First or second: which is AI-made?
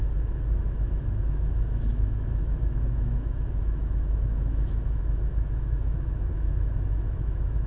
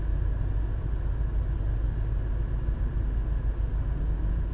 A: first